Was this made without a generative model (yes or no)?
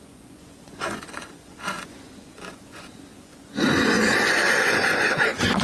no